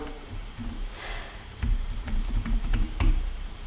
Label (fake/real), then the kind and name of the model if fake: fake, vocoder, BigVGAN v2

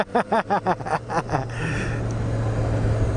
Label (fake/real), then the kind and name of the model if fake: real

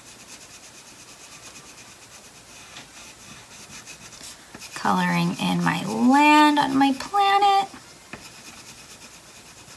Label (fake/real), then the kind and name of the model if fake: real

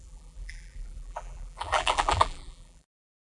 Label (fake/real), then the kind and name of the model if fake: fake, vocoder, BigVGAN v2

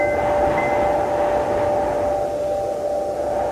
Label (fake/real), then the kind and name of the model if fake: real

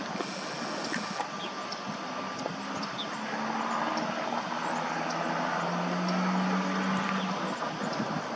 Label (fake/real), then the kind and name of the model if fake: real